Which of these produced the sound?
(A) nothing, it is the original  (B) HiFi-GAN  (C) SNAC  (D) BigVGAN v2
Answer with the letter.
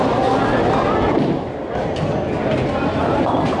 A